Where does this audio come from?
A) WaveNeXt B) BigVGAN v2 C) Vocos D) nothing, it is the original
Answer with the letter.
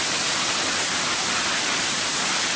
D